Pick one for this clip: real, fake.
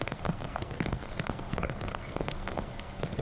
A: fake